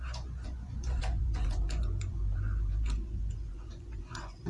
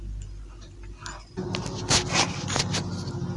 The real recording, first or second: second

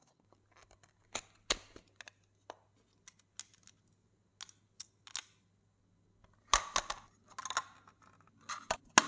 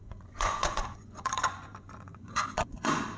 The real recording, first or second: first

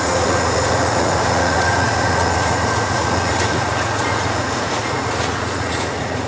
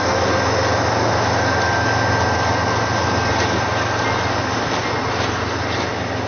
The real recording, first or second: second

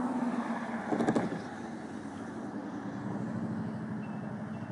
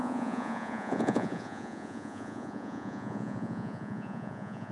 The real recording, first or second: first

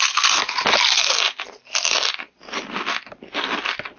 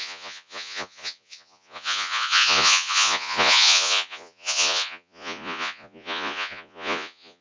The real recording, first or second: first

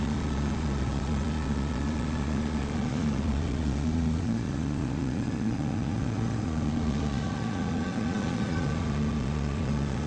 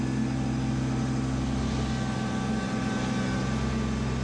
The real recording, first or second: second